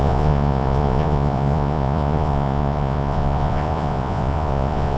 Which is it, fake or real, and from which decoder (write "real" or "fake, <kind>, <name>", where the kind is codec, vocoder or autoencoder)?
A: fake, vocoder, Vocos